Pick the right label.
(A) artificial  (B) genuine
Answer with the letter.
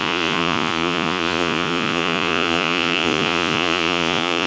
A